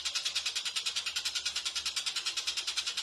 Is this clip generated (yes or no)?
no